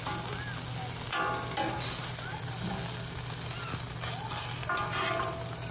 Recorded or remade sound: recorded